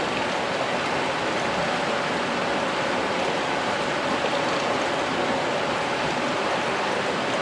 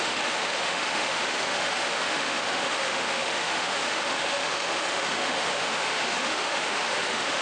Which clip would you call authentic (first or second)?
first